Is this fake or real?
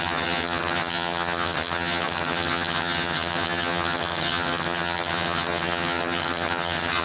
fake